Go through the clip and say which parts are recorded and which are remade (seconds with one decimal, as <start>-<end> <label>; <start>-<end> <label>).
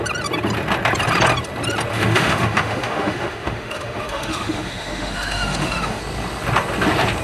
0.0-1.9 recorded; 1.9-6.0 remade; 6.0-7.2 recorded